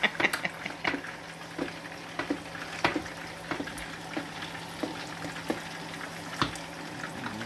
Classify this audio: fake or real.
real